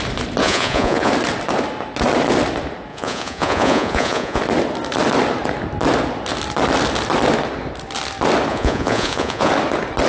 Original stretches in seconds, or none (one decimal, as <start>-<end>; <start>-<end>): 0.0-0.4; 1.1-2.9; 4.4-8.5; 9.5-10.1